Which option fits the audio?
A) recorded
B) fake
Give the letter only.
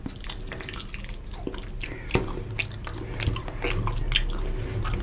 A